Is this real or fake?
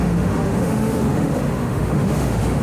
fake